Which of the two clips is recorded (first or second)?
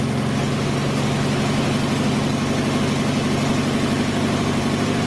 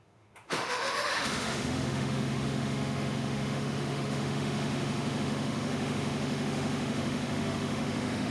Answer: first